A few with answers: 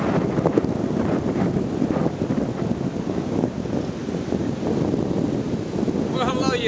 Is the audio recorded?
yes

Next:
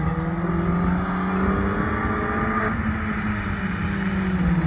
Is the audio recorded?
yes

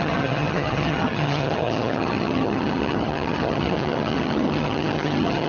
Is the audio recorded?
no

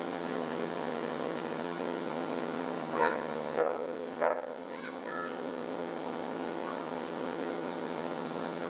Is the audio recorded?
no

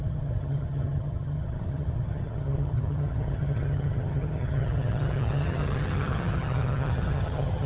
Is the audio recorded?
no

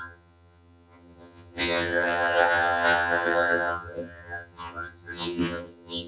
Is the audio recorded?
no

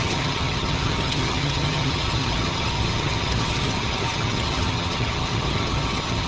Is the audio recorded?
no